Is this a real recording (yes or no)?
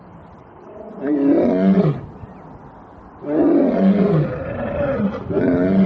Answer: yes